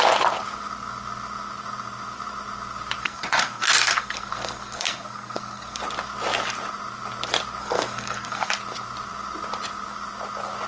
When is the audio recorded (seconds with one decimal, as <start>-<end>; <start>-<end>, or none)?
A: 0.0-3.0; 5.8-7.6; 8.5-10.7